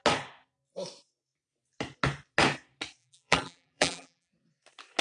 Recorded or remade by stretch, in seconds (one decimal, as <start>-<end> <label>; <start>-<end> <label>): 0.0-3.0 recorded; 3.0-4.3 remade; 4.3-5.0 recorded